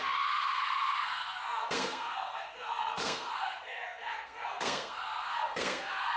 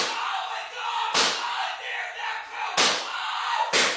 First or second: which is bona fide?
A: second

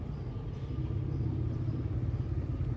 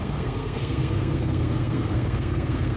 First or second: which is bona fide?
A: first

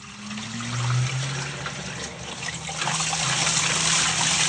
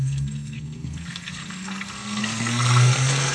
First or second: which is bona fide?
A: first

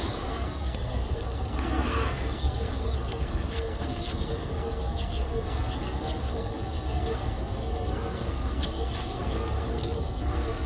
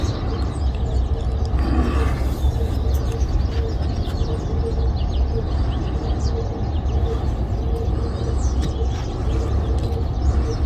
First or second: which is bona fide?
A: second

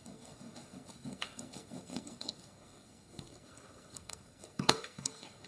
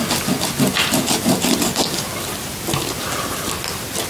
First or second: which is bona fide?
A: second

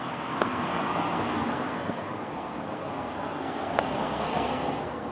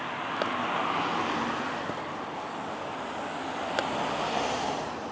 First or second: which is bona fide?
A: second